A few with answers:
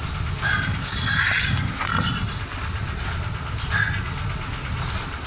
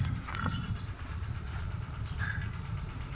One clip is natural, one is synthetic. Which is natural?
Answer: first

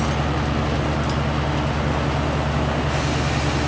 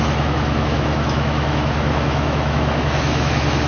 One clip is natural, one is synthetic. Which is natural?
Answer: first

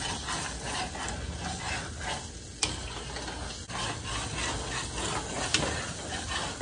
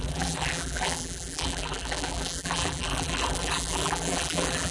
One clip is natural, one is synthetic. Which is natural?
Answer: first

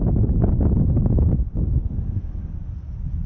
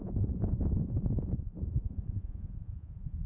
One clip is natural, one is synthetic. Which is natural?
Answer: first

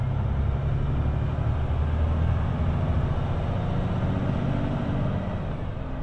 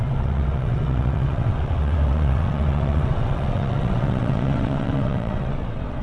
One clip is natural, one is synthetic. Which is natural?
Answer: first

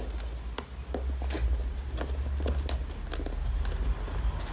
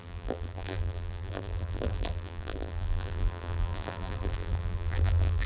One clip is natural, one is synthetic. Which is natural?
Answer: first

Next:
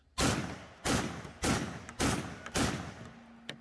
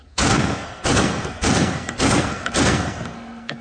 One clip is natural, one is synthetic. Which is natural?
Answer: first